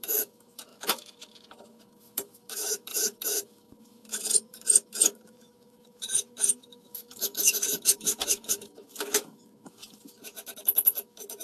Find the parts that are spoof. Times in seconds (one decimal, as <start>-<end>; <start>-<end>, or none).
0.0-11.4